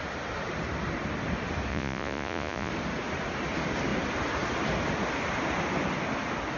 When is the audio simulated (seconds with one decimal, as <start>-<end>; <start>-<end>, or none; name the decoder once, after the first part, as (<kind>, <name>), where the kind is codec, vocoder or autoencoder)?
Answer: 1.7-2.7 (vocoder, Vocos)